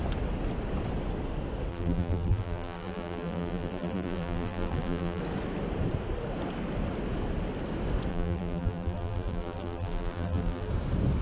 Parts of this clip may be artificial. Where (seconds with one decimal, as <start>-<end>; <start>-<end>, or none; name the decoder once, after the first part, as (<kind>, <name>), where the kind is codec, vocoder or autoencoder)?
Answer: 1.7-5.2 (vocoder, BigVGAN v2); 8.1-10.7